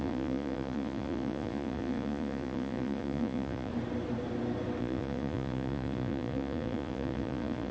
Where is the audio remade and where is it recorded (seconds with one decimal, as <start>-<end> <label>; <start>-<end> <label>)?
0.0-3.7 remade; 3.7-4.8 recorded; 4.8-7.7 remade